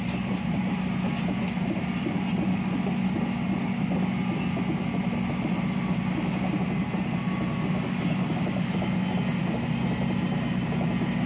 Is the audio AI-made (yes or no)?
no